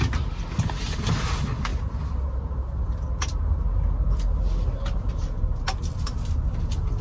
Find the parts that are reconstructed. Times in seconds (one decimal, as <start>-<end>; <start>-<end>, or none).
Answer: none